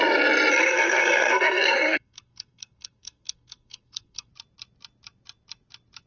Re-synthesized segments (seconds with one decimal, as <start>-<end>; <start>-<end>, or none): 0.6-4.3